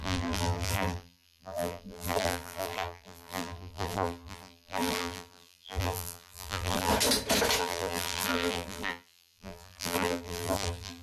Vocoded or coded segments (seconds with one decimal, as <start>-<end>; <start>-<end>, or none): 0.0-6.9; 7.6-11.0